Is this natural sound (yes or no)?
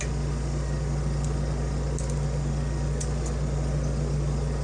yes